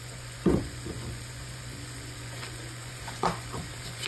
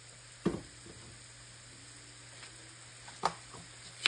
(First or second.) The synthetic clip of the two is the first